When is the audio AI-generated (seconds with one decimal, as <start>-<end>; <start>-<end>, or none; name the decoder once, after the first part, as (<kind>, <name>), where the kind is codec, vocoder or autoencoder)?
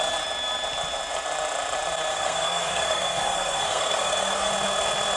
2.1-4.5 (codec, SNAC)